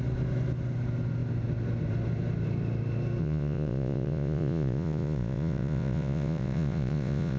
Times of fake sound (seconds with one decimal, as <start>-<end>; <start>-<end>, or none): 3.2-7.4